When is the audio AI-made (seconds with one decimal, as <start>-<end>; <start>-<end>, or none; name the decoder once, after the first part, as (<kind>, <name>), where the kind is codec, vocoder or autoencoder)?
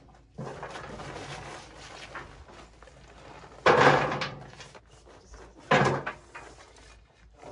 none